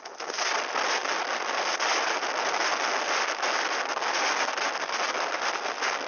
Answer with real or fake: real